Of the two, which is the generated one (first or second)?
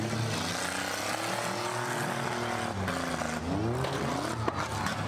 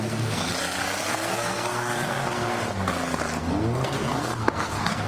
second